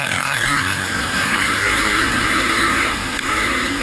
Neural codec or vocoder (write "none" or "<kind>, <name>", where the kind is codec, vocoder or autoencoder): codec, SNAC